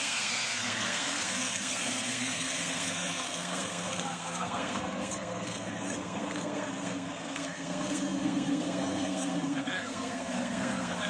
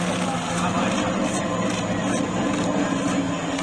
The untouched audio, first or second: second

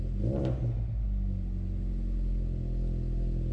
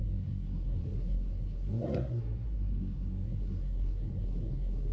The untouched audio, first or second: first